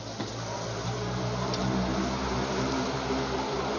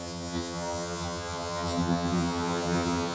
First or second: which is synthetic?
second